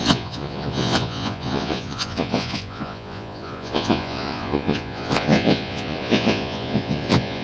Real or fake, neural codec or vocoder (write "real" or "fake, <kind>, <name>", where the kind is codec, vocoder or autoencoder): fake, vocoder, Vocos